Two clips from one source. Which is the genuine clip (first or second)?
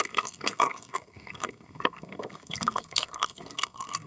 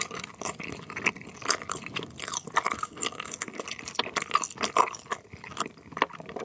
second